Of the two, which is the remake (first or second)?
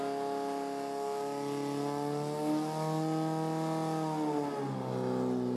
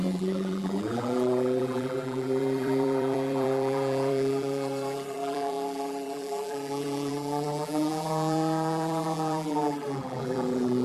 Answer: second